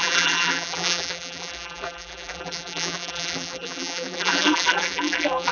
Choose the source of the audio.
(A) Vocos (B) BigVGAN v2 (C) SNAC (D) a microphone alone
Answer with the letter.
B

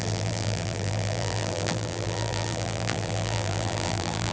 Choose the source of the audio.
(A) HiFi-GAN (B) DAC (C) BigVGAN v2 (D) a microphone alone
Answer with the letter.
C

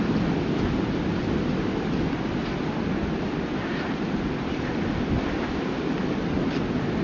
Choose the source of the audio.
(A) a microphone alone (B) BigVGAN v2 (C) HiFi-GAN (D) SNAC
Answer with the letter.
A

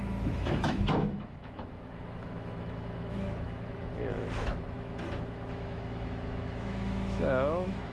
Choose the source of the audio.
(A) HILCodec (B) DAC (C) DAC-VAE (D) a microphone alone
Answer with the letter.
C